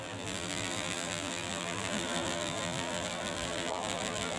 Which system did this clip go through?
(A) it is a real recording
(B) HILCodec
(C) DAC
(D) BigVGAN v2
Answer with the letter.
D